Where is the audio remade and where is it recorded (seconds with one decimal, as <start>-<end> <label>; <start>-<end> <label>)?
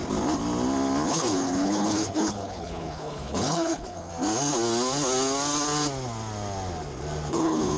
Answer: 0.0-1.1 recorded; 1.1-4.1 remade; 4.1-7.3 recorded; 7.3-7.8 remade